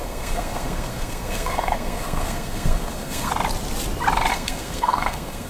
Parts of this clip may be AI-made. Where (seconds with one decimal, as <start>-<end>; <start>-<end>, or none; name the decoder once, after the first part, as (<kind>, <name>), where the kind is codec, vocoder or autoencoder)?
0.0-3.3 (codec, SNAC); 4.3-5.5